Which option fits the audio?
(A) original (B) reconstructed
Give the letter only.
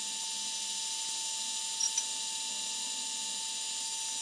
A